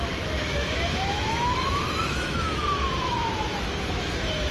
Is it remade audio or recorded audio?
remade